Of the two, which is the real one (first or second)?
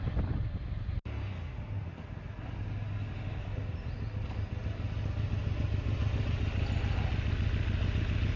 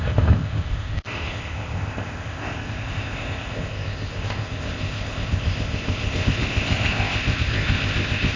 first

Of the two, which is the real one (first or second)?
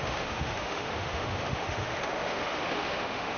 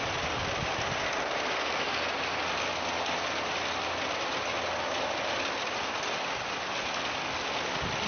second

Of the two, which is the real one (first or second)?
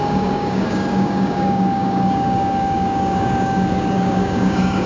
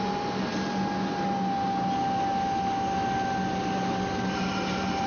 second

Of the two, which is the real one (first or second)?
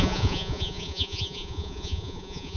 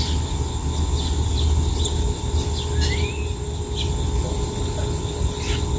second